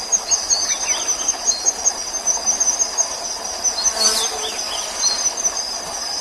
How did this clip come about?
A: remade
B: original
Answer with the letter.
B